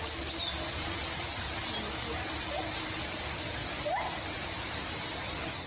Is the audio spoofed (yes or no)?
no